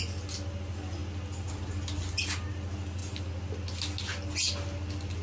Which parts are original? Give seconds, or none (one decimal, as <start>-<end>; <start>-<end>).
0.0-5.2